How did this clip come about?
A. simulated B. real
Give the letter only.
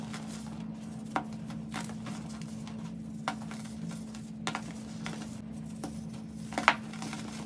B